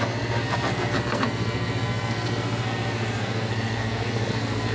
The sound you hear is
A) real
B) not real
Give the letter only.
B